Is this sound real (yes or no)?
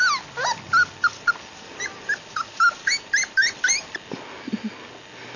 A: yes